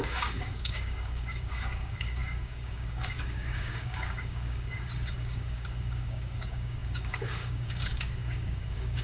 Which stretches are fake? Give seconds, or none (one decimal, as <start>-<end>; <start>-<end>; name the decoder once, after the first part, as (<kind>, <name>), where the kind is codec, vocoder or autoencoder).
0.0-9.0 (codec, DAC)